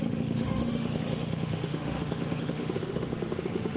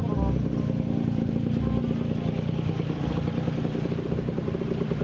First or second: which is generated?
first